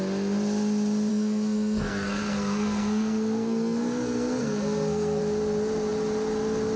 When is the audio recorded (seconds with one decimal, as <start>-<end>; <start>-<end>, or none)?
0.0-1.1; 5.2-6.8